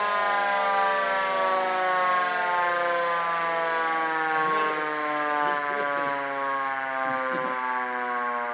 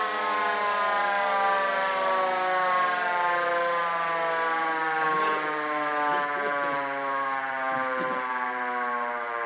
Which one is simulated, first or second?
second